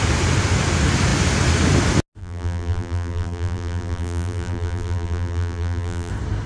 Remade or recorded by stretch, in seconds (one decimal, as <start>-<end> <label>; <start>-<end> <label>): 0.0-2.2 recorded; 2.2-6.1 remade; 6.1-6.5 recorded